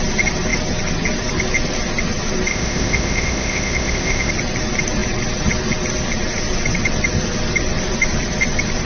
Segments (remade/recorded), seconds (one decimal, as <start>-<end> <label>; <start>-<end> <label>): 0.0-2.5 recorded; 2.5-4.3 remade; 4.3-8.9 recorded